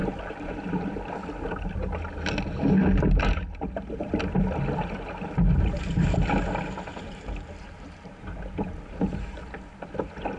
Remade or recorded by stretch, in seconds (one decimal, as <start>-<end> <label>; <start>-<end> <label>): 0.0-0.8 remade; 0.8-6.9 recorded; 6.9-9.4 remade; 9.4-10.4 recorded